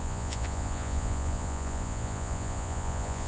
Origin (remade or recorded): remade